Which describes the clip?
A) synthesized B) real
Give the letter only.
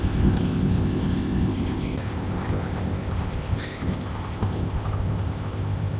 A